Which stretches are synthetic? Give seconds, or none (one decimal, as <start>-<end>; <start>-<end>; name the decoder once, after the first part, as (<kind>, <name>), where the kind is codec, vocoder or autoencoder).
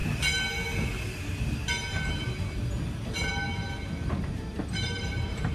4.6-5.5 (vocoder, BigVGAN v2)